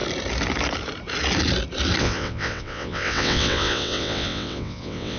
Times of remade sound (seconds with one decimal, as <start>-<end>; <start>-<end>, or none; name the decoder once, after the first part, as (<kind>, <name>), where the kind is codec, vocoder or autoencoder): 2.0-5.2 (vocoder, WaveNeXt)